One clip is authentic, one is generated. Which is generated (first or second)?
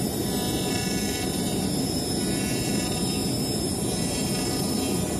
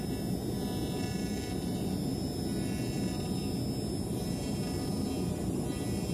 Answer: first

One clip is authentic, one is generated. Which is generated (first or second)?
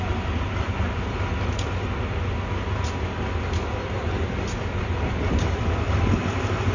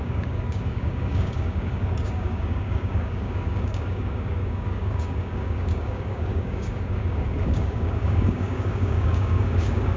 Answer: second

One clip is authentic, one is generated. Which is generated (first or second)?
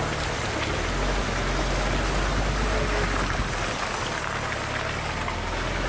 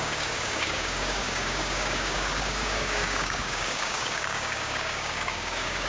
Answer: second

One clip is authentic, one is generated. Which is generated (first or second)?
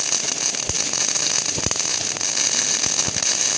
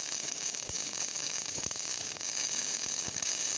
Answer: second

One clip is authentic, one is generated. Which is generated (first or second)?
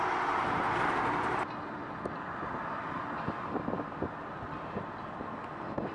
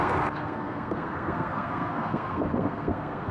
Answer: second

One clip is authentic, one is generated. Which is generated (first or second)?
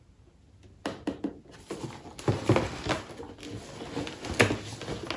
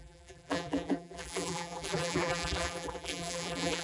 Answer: second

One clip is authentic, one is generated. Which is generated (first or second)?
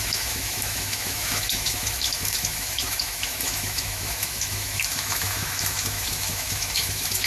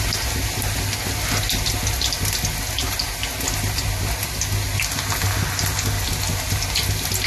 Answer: first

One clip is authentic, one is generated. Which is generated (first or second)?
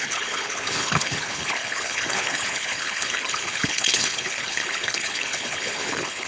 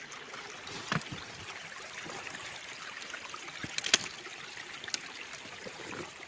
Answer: first